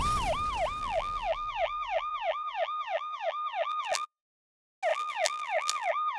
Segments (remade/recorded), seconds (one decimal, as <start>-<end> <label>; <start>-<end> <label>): 0.0-0.8 recorded; 0.8-4.5 remade; 4.5-4.9 recorded; 4.9-6.2 remade